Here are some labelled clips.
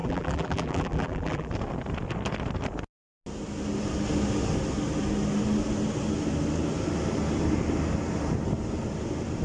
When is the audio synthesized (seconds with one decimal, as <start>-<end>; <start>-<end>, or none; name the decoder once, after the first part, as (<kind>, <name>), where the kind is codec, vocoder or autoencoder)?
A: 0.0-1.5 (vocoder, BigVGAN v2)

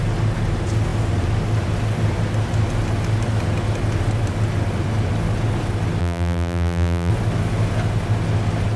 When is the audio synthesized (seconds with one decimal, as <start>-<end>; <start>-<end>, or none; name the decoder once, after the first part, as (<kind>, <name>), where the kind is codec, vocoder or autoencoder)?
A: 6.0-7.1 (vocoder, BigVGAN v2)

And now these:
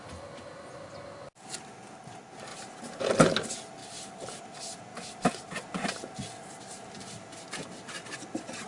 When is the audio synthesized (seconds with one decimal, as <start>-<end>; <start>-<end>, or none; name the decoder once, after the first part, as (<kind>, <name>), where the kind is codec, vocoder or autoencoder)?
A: 2.5-3.0 (vocoder, BigVGAN v2); 3.8-4.4; 4.9-7.1